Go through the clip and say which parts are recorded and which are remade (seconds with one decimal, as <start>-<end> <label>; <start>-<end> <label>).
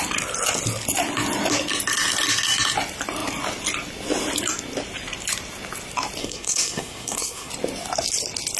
0.0-6.2 recorded; 6.2-7.5 remade; 7.5-8.6 recorded